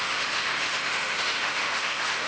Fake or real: fake